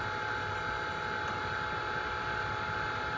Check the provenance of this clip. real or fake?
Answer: real